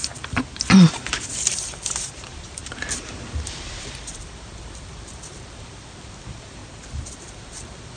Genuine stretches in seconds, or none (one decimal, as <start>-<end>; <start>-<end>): 0.0-1.4; 2.6-3.5; 6.6-7.2